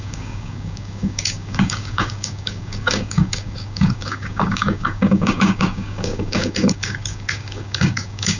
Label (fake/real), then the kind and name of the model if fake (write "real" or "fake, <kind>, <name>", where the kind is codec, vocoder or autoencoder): fake, codec, DAC